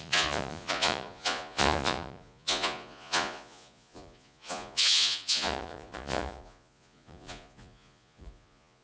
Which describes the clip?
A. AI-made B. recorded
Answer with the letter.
A